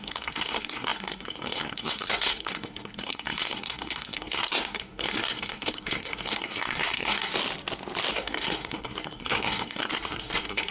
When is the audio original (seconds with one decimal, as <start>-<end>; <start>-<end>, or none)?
7.3-8.1